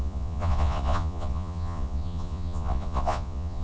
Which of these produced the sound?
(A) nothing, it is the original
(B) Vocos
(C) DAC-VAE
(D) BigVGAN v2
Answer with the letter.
B